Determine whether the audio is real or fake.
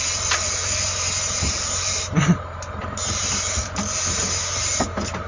fake